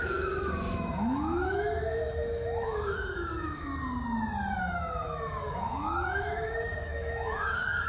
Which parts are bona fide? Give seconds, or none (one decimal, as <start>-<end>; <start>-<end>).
3.7-4.6

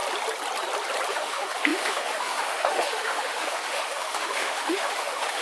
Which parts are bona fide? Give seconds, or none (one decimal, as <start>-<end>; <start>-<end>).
0.0-1.1

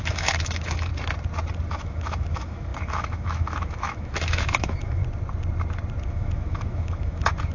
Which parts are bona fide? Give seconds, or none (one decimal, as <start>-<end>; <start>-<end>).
0.9-1.7; 5.0-6.1

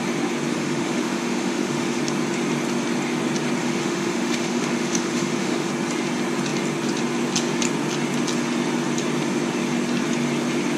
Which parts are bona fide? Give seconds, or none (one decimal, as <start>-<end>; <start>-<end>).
0.0-0.5; 2.0-3.6; 5.7-10.8

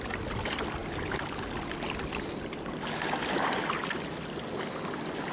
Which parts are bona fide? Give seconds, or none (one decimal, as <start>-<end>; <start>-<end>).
0.0-5.3

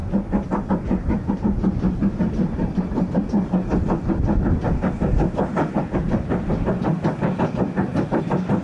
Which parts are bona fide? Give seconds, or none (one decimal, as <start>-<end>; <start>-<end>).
0.0-8.6

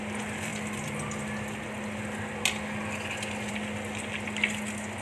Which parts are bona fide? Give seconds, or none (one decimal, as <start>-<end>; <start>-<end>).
0.0-5.0